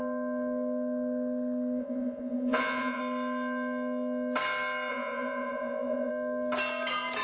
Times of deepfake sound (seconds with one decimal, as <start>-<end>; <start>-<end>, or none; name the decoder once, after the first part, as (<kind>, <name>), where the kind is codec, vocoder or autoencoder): 1.8-3.0 (vocoder, Vocos); 4.9-6.1